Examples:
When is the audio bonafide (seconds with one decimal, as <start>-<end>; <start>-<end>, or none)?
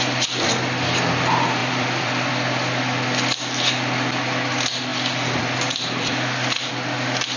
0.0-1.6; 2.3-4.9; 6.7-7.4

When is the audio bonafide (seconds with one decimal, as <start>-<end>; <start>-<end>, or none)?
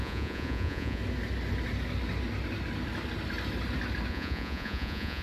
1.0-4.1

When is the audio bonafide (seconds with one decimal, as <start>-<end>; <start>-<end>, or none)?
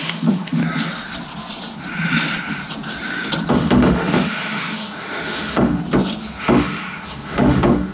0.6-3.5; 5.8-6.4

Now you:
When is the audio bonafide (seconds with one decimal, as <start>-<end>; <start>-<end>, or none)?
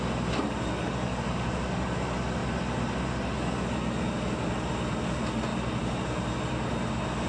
0.0-7.3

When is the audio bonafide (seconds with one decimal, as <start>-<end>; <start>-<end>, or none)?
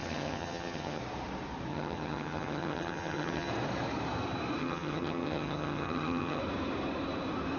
1.0-1.7; 3.5-4.6; 6.4-7.6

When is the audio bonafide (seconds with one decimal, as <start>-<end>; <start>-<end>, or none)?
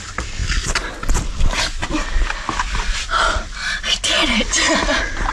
0.0-5.3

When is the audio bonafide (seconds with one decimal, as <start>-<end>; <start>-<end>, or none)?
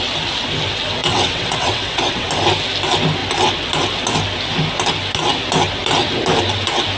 0.0-1.0; 2.3-7.0